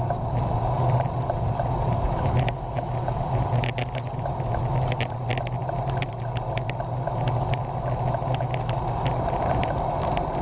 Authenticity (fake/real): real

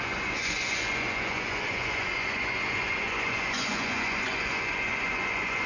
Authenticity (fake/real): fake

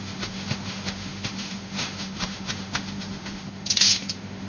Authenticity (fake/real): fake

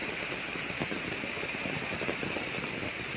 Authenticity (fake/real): real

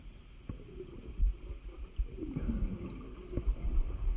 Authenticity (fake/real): real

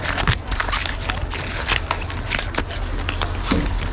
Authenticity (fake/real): real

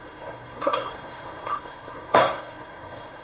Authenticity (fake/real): fake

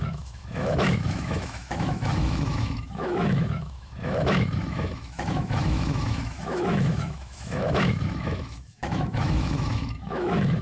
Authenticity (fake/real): fake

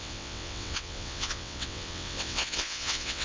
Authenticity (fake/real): fake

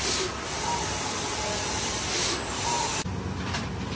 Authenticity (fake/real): real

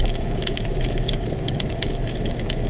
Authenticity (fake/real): fake